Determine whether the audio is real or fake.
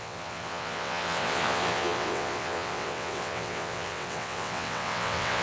fake